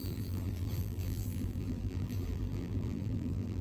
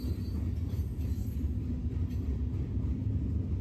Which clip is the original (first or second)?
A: second